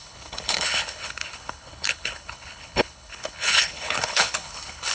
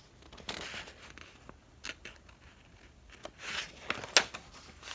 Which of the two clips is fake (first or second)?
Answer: first